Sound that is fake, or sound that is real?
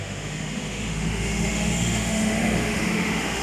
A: fake